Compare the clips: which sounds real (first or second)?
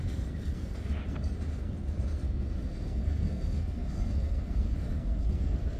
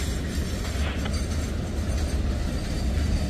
second